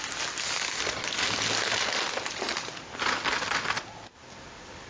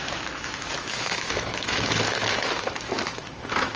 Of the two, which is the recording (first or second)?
first